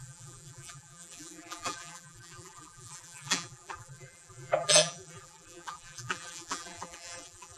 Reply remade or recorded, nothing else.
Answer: remade